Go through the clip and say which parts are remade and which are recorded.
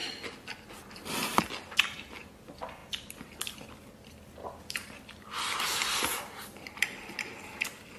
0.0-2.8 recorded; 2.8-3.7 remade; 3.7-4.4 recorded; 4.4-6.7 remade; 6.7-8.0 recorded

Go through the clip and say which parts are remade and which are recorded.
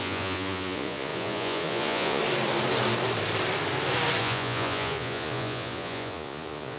0.0-2.2 remade; 2.2-4.2 recorded; 4.2-6.8 remade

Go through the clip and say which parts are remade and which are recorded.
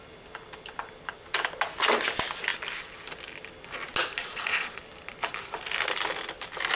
0.0-4.2 recorded; 4.2-4.8 remade; 4.8-6.8 recorded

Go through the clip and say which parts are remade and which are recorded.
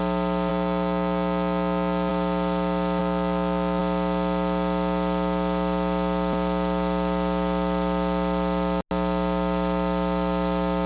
0.0-0.5 recorded; 0.5-2.1 remade; 2.1-3.0 recorded; 3.0-3.8 remade; 3.8-10.9 recorded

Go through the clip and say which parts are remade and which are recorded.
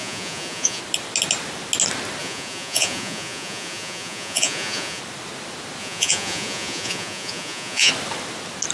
0.0-0.8 remade; 0.8-2.2 recorded; 2.2-5.0 remade; 5.0-5.8 recorded; 5.8-7.9 remade; 7.9-8.7 recorded